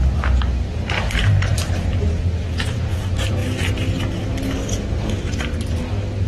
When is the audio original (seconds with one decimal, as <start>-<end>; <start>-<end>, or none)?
0.0-1.5; 2.1-6.3